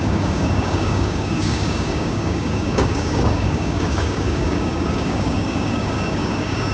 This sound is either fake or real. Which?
fake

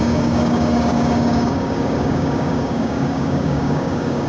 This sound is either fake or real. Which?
fake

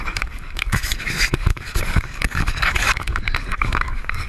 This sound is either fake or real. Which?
fake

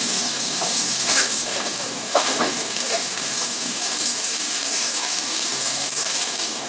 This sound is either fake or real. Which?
fake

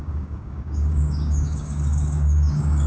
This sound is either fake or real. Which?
fake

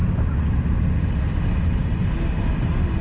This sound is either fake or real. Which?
real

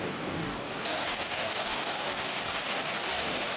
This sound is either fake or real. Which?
fake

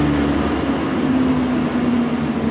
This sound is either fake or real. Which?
real